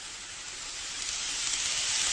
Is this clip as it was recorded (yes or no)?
yes